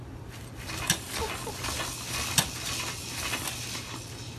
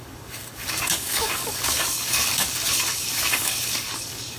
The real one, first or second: first